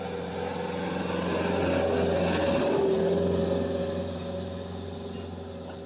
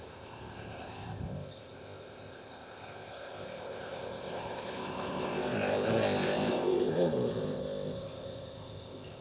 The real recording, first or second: first